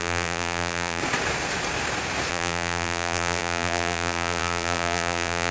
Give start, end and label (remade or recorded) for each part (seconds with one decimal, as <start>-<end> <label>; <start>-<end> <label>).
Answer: 0.0-1.0 remade; 1.0-2.3 recorded; 2.3-5.5 remade